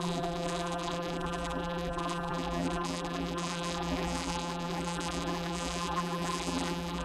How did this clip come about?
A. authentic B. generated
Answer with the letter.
B